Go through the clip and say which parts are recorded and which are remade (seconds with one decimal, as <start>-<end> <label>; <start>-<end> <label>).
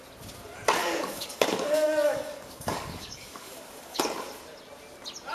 0.0-0.8 recorded; 0.8-4.0 remade; 4.0-5.3 recorded